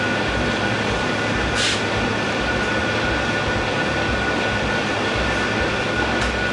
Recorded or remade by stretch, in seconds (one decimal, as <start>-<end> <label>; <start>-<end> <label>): 0.0-6.5 recorded